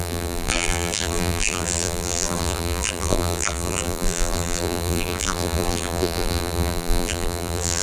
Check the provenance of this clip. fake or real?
fake